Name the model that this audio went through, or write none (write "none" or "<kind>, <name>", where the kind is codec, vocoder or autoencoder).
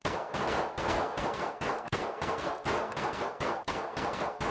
codec, SNAC